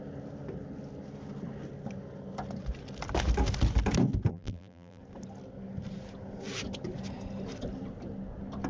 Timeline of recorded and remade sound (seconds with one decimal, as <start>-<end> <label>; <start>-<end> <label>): 0.0-4.3 recorded; 4.3-5.0 remade; 5.0-8.7 recorded